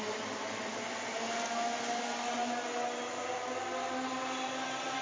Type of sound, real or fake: real